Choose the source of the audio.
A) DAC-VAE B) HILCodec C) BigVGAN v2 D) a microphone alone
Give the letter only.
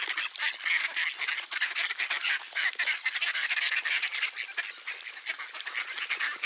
D